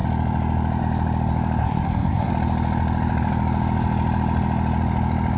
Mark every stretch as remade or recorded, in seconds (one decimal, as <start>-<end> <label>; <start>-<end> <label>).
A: 0.0-1.6 recorded; 1.6-2.3 remade; 2.3-5.4 recorded